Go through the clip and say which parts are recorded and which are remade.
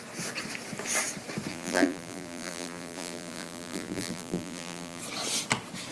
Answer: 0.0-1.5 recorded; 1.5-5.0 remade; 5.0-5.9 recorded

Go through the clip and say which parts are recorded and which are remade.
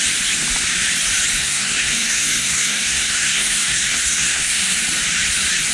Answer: 0.0-1.4 recorded; 1.4-4.8 remade; 4.8-5.7 recorded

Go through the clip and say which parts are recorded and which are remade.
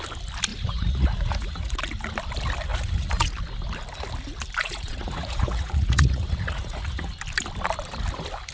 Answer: 0.0-0.5 recorded; 0.5-1.8 remade; 1.8-2.7 recorded; 2.7-3.3 remade; 3.3-4.6 recorded; 4.6-7.1 remade; 7.1-8.5 recorded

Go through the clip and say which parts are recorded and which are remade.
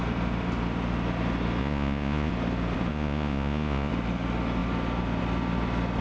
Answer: 0.0-1.6 recorded; 1.6-2.3 remade; 2.3-2.9 recorded; 2.9-3.9 remade; 3.9-6.0 recorded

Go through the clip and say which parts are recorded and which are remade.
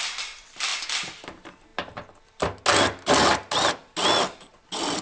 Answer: 0.0-5.0 recorded